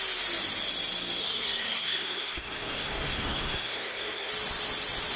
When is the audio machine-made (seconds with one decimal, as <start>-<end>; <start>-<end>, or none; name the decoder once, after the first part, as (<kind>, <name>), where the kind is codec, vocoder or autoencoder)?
1.2-4.3 (codec, SNAC)